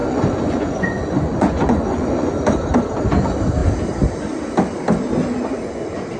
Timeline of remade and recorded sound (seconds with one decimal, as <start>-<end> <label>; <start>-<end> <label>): 0.0-2.3 remade; 2.3-6.2 recorded